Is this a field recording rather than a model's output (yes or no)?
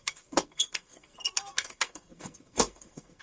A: no